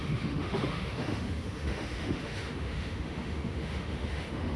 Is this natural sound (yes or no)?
no